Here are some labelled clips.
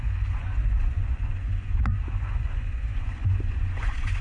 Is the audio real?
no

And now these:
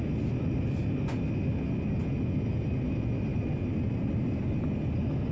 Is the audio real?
yes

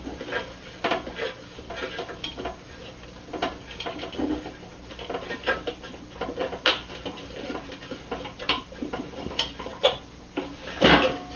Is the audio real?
yes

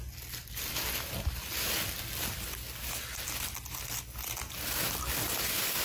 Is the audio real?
yes